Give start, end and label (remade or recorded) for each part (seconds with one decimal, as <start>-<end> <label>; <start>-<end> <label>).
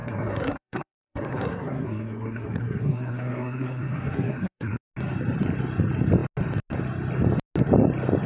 0.0-4.8 remade; 4.8-8.3 recorded